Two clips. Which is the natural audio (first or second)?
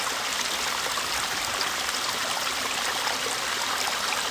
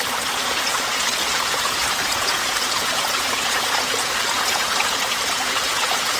first